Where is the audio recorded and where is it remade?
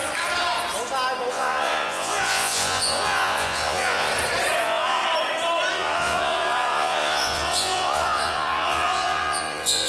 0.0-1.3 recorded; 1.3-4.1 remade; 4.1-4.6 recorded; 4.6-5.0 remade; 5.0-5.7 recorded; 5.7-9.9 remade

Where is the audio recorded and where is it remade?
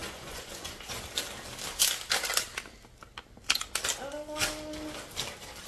0.0-1.0 remade; 1.0-5.7 recorded